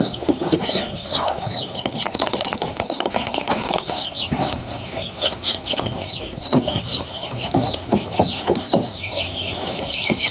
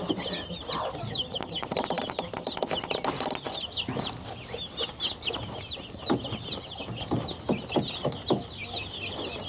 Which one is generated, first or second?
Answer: first